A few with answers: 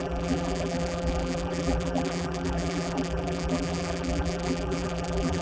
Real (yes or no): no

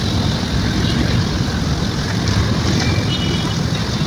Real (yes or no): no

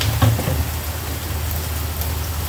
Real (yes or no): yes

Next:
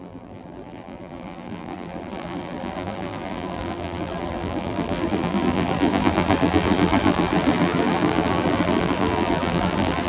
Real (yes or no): no